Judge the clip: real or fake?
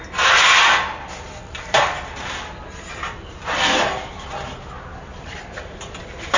real